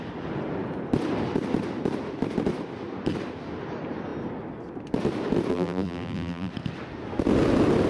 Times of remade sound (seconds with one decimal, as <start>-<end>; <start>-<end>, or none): 5.5-6.5